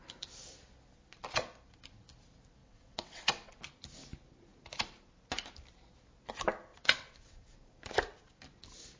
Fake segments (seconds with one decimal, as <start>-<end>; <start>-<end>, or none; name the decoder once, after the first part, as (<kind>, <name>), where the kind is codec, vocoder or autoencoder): 2.6-3.6 (vocoder, WaveNeXt); 6.7-7.8